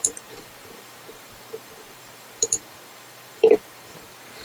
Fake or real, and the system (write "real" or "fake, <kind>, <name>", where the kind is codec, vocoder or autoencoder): fake, vocoder, BigVGAN v2